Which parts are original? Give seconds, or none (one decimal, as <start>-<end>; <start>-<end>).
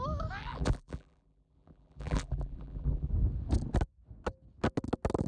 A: 0.0-0.4; 3.1-5.3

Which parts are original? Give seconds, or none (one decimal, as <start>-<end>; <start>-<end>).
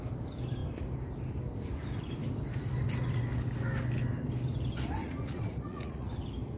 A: 0.0-5.0; 6.1-6.6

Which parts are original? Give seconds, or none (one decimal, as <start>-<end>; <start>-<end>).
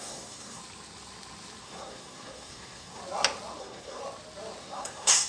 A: 0.6-1.6; 3.0-3.6; 4.0-4.6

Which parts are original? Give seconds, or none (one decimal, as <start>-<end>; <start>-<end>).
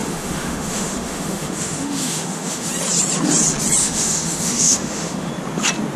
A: 2.7-3.8; 5.3-6.0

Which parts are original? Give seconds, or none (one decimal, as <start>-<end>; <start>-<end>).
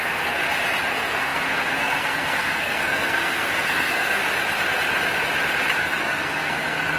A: 0.4-0.9; 4.2-5.8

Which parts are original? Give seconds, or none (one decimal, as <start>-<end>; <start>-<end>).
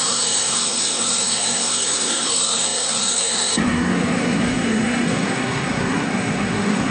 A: none